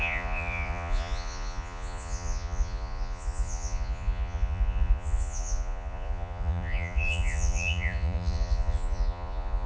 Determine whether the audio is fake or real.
fake